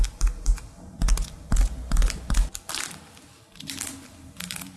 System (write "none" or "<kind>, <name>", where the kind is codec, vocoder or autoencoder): vocoder, BigVGAN v2